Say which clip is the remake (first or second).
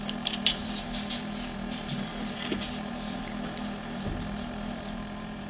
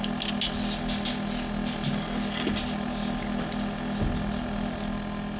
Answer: first